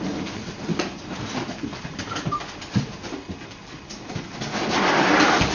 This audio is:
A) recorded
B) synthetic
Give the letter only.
A